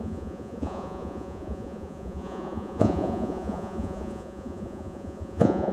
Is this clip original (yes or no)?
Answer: no